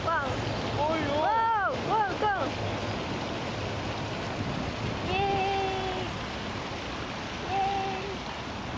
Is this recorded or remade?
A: recorded